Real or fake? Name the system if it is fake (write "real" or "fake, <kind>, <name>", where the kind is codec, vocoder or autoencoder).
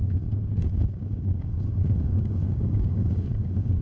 fake, codec, DAC